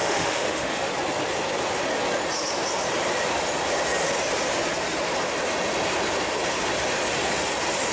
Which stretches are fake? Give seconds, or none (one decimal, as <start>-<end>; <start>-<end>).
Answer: 0.0-0.9